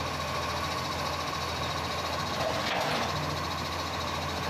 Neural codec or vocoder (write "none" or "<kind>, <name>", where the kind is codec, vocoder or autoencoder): none